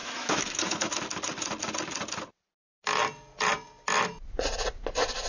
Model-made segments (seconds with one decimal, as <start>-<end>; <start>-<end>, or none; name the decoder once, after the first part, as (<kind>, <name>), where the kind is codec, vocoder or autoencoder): 0.0-0.9 (autoencoder, DAC-VAE)